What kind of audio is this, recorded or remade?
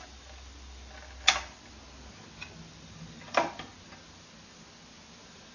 recorded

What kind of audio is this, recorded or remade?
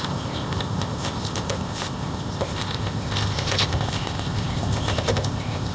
remade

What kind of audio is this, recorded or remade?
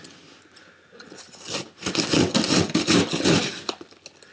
recorded